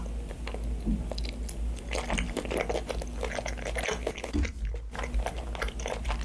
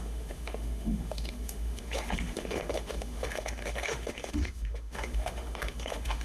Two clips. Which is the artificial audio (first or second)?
second